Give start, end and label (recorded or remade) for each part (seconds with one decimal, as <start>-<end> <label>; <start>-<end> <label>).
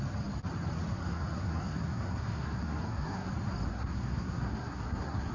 0.0-0.9 recorded; 0.9-3.3 remade; 3.3-3.7 recorded; 3.7-5.3 remade